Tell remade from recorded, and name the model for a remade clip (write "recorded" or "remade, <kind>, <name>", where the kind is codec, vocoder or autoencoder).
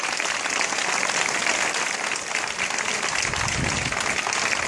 recorded